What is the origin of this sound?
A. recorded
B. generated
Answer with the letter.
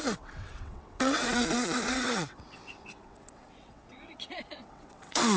B